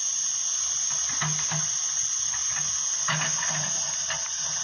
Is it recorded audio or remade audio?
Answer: recorded